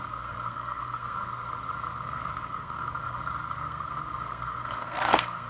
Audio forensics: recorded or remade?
remade